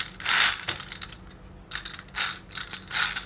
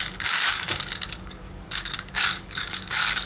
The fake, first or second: second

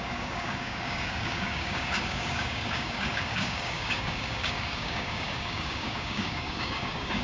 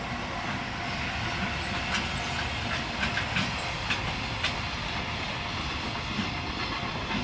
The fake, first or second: first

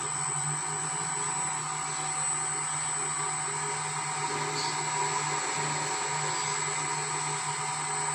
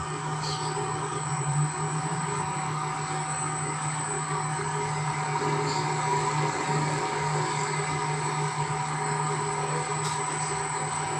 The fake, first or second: second